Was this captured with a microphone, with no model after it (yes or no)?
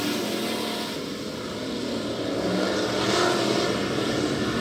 yes